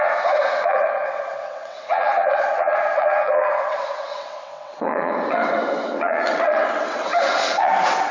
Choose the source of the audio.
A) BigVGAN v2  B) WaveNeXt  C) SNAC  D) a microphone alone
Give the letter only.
B